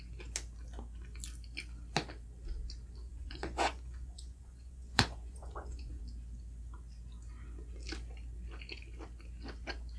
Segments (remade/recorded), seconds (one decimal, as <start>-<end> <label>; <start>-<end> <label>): 0.0-3.1 recorded; 3.1-6.0 remade; 6.0-10.0 recorded